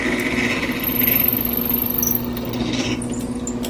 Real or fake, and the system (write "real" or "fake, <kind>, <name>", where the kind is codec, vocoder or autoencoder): real